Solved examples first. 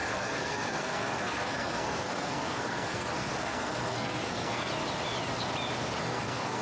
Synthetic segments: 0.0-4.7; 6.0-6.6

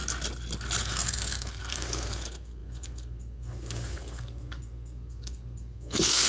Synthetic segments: 0.8-6.3

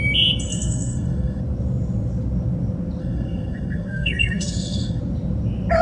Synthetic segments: 0.5-1.4; 3.0-5.0

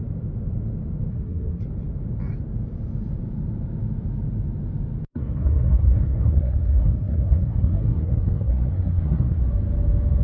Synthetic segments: 1.1-1.6; 5.1-9.4

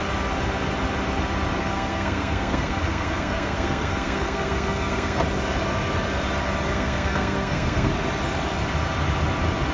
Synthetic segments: 1.6-5.2; 6.7-7.9

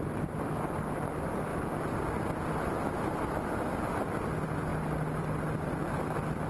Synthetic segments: none

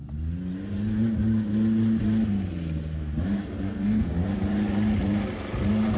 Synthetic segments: 3.4-4.1